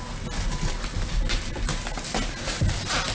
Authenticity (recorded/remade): recorded